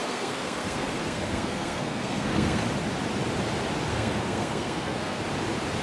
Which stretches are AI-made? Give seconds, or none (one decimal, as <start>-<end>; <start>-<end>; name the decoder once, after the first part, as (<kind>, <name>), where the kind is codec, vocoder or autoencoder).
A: 0.0-2.6 (codec, SNAC); 3.9-5.2